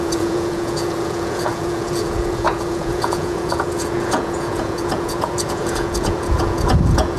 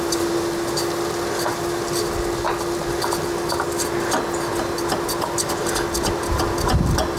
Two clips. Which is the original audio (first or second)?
second